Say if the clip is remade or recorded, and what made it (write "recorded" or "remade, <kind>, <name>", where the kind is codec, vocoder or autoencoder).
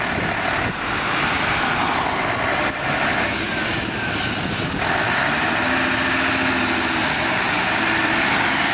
recorded